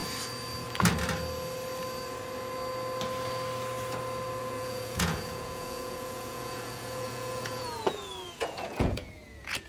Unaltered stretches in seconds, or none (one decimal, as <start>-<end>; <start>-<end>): 0.0-4.4